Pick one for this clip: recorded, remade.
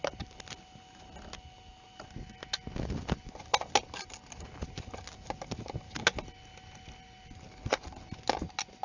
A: recorded